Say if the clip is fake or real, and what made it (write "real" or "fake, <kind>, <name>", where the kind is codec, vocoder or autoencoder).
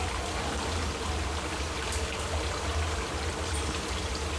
real